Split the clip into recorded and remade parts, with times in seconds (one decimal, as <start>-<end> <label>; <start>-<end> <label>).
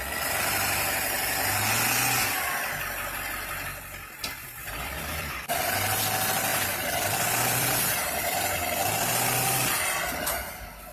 0.0-4.6 recorded; 4.6-6.0 remade; 6.0-6.5 recorded; 6.5-8.9 remade; 8.9-10.9 recorded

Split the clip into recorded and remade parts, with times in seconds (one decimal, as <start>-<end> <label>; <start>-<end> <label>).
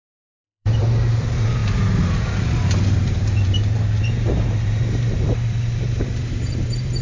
0.0-7.0 remade